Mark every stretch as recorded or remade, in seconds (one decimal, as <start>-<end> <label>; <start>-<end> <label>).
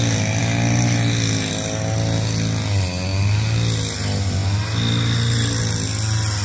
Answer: 0.0-6.4 recorded